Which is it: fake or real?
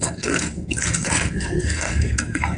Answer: fake